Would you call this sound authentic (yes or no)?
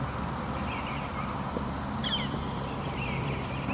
no